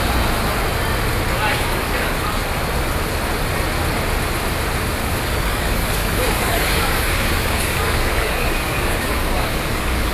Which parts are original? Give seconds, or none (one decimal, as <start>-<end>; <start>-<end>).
0.0-1.5; 2.4-5.0